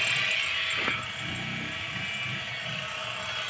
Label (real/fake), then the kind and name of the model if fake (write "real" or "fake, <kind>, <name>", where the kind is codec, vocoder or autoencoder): real